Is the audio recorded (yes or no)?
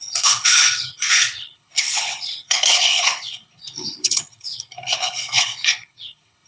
no